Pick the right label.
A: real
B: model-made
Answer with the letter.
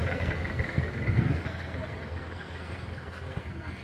B